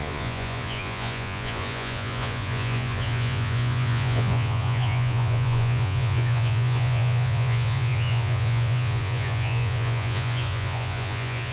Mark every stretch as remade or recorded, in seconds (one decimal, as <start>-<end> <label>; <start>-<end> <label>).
0.0-11.5 remade